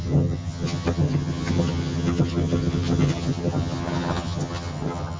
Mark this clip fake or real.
fake